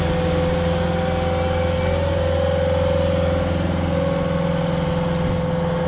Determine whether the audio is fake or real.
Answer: real